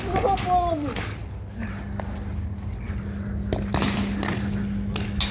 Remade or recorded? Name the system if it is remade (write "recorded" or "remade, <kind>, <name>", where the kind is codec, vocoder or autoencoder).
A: recorded